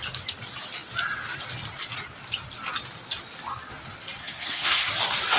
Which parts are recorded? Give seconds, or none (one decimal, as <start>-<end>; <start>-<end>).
0.0-4.2; 4.9-5.4

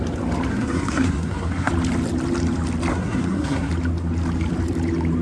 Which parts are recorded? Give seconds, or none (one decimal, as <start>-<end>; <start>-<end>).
0.0-0.5; 1.7-2.9; 3.7-5.2

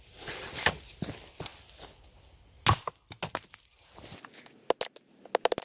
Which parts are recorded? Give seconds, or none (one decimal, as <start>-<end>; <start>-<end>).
0.0-5.6

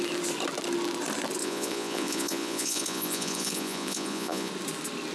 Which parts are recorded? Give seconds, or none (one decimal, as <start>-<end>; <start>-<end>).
0.0-1.4; 4.5-5.1

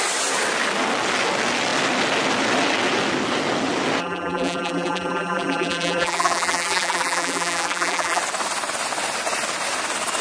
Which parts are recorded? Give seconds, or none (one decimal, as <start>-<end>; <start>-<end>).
0.0-4.0; 8.2-10.2

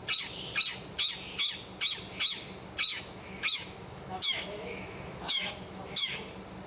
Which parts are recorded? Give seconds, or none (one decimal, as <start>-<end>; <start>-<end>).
0.0-2.9; 6.3-6.7